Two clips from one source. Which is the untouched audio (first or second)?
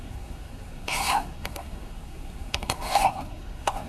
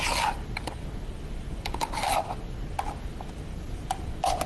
second